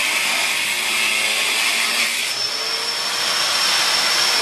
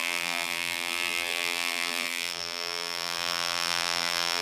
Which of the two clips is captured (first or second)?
first